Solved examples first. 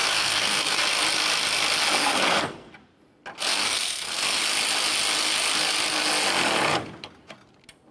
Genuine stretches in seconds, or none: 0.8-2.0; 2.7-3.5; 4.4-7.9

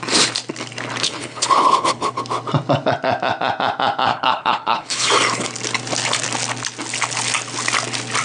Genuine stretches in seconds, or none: 0.0-1.0; 2.2-4.1; 5.1-8.2

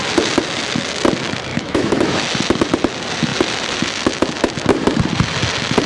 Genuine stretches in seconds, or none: 0.0-1.5; 2.2-5.9

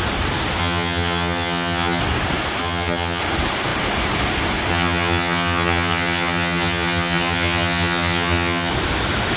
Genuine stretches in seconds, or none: 0.0-0.6; 2.0-2.6; 3.2-4.7; 8.7-9.4

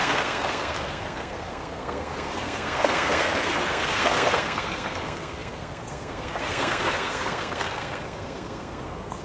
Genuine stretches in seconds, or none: none